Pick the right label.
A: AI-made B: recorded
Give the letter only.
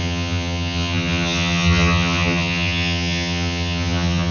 A